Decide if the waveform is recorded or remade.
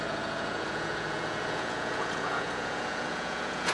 remade